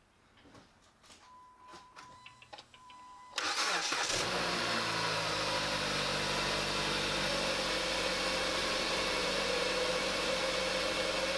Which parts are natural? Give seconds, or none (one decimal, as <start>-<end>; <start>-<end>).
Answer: 0.0-1.7; 3.4-3.9; 4.6-8.6; 10.7-11.4